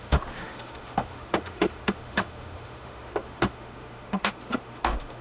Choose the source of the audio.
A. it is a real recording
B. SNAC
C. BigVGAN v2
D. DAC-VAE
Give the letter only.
D